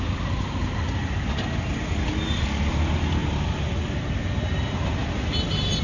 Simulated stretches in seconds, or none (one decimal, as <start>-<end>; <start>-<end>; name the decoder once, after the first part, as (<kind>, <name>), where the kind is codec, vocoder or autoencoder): none